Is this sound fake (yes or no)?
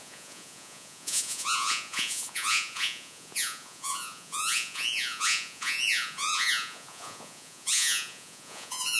yes